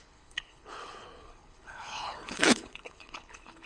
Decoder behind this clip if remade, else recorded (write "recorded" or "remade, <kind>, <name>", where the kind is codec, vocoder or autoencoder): remade, codec, HILCodec